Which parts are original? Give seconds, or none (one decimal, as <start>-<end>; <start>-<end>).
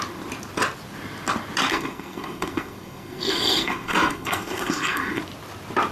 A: 0.0-1.7; 5.2-5.9